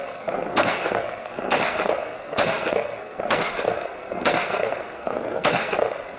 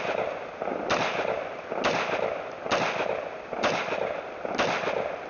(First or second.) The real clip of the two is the second